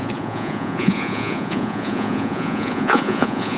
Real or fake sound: fake